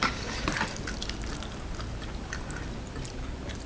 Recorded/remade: recorded